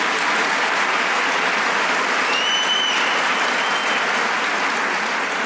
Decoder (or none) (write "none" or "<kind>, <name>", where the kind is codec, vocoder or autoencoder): none